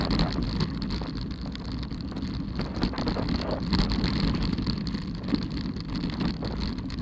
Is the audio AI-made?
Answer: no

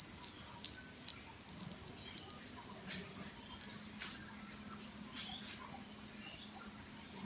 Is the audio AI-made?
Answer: no